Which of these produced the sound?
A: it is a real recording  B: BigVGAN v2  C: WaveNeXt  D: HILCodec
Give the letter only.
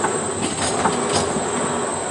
A